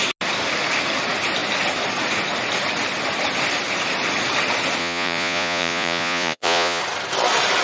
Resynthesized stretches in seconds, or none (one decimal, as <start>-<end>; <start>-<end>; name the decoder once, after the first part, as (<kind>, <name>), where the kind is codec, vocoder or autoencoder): 4.8-6.8 (vocoder, Vocos)